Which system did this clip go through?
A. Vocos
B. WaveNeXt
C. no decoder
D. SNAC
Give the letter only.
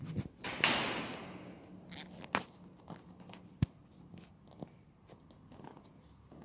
C